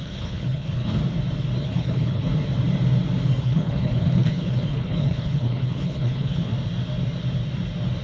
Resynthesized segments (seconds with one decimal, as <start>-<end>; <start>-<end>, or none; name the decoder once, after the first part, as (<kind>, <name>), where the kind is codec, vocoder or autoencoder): 0.0-1.0 (codec, HILCodec); 1.6-2.3; 3.4-6.5